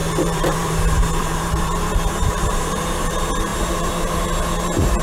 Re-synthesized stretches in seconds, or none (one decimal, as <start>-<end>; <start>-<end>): 0.0-5.0